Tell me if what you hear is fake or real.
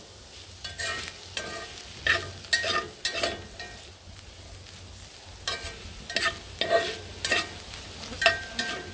real